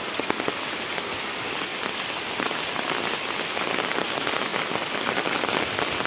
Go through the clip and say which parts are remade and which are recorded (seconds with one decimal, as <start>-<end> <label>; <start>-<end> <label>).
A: 0.0-6.1 recorded

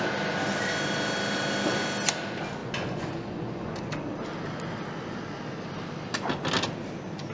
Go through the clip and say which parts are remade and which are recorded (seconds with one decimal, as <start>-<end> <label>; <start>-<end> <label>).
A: 0.0-2.6 recorded; 2.6-3.9 remade; 3.9-7.3 recorded

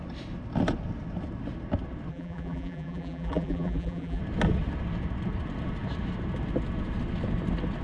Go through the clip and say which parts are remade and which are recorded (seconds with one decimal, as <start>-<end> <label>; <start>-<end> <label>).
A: 0.0-2.1 recorded; 2.1-4.2 remade; 4.2-7.8 recorded

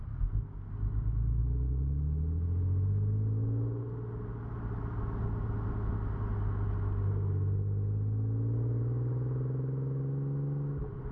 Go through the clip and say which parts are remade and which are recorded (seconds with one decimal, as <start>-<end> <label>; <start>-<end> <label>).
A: 0.0-11.1 recorded

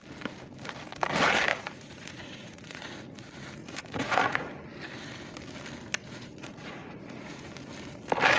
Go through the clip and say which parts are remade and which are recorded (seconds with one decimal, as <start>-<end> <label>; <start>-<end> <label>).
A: 0.0-1.5 recorded; 1.5-2.9 remade; 2.9-3.6 recorded; 3.6-4.5 remade; 4.5-6.0 recorded; 6.0-7.5 remade; 7.5-8.4 recorded

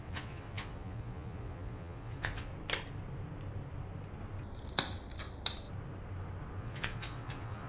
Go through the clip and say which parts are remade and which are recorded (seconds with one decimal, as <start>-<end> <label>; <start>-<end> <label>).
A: 0.0-2.5 remade; 2.5-6.6 recorded; 6.6-7.7 remade

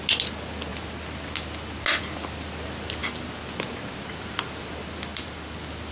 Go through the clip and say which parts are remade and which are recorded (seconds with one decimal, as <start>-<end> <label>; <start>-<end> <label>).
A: 0.0-5.1 recorded; 5.1-5.9 remade

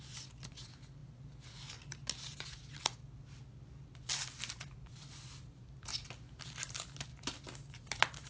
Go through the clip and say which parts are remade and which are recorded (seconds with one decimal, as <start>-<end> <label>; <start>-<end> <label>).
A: 0.0-8.3 recorded